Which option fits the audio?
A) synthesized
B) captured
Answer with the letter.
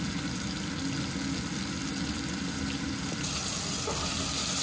B